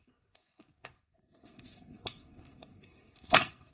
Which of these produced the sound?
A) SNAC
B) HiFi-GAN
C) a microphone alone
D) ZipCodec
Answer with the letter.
A